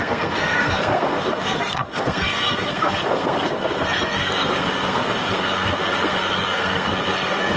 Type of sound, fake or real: fake